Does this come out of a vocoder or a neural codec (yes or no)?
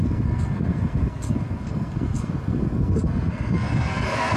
yes